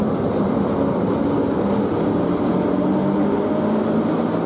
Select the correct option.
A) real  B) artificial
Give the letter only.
A